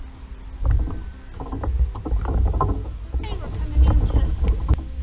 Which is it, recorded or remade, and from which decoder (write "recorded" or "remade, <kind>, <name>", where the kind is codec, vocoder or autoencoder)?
recorded